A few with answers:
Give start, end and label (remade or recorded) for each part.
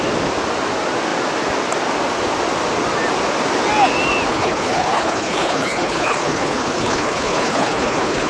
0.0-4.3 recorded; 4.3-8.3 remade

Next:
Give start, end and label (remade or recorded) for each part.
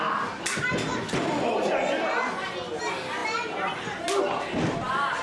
0.0-5.2 recorded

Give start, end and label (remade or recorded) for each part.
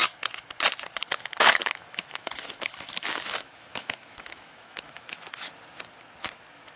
0.0-1.6 recorded; 1.6-5.5 remade; 5.5-6.8 recorded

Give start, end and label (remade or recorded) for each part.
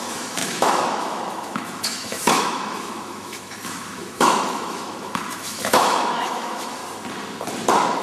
0.0-6.8 remade; 6.8-8.0 recorded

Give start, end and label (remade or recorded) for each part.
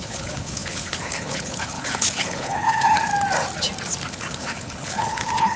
0.0-3.1 remade; 3.1-4.1 recorded; 4.1-5.6 remade